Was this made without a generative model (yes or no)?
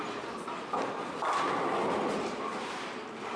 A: no